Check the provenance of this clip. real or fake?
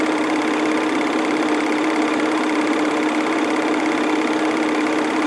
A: fake